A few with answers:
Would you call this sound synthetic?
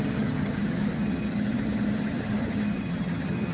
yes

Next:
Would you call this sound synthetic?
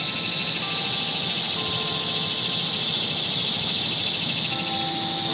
no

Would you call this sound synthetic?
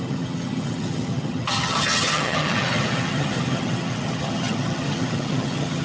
yes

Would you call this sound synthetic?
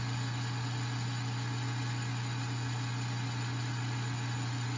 no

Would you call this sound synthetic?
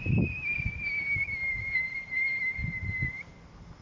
no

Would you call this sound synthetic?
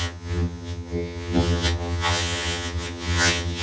yes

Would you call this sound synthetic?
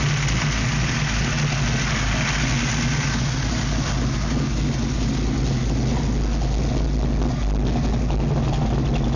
no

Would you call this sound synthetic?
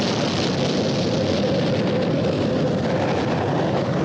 no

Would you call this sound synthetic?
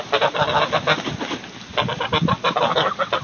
no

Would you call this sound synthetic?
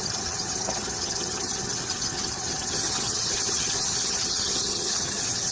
yes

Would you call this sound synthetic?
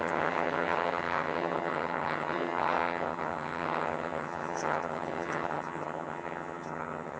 yes